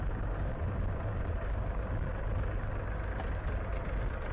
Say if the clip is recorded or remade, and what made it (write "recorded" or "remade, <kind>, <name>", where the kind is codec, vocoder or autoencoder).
recorded